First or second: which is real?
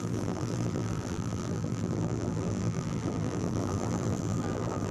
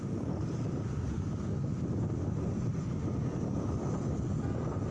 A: second